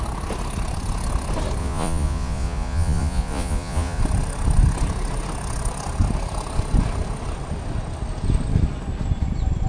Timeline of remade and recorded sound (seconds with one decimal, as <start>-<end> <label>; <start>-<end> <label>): 0.0-1.6 recorded; 1.6-4.0 remade; 4.0-9.7 recorded